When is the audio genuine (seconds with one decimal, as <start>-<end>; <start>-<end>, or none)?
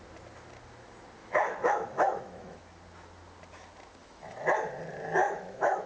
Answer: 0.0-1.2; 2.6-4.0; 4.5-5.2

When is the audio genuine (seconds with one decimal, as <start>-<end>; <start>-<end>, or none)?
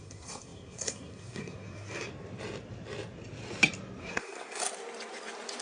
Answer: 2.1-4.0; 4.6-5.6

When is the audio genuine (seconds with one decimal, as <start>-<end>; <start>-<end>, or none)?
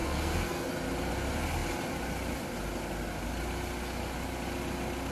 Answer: 0.7-5.1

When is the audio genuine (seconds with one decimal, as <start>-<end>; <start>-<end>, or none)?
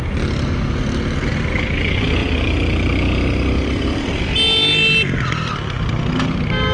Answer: 0.0-6.7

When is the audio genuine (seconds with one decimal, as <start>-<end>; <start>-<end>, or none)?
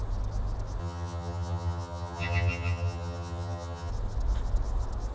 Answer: 0.0-0.8; 3.9-5.1